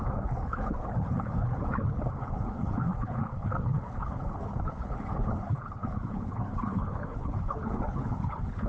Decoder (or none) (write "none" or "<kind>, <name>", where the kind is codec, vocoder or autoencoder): codec, HILCodec